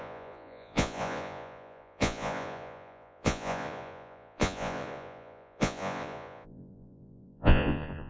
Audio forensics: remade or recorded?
remade